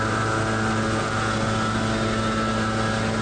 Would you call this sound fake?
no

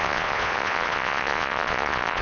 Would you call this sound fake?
yes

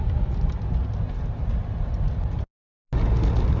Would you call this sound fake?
no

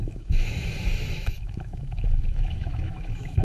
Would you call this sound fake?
yes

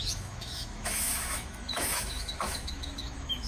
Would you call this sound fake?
yes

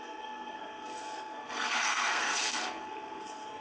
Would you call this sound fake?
yes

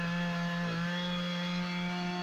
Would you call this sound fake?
no